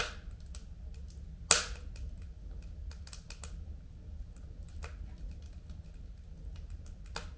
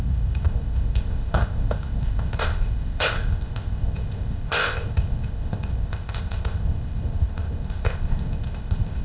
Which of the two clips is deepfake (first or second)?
second